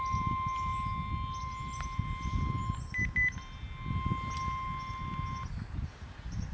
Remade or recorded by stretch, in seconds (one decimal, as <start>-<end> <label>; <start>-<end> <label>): 0.0-0.7 remade; 0.7-1.4 recorded; 1.4-2.6 remade; 2.6-5.7 recorded; 5.7-6.5 remade